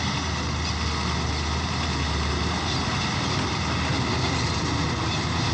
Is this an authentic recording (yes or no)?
yes